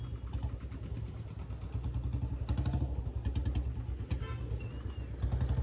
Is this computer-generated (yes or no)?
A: no